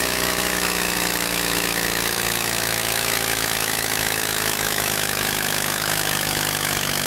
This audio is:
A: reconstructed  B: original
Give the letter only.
A